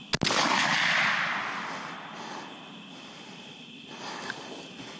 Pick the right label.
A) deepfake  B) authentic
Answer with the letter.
B